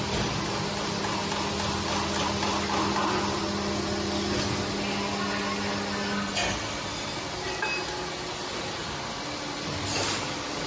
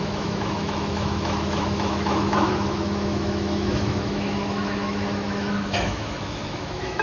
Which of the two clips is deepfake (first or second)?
second